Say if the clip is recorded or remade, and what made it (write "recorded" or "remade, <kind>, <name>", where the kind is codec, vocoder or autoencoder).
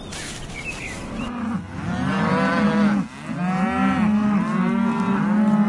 recorded